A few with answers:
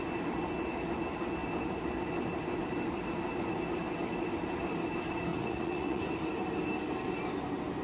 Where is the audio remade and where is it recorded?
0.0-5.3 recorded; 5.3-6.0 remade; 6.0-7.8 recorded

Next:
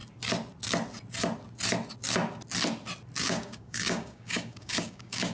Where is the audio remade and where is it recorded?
0.0-3.2 recorded; 3.2-5.3 remade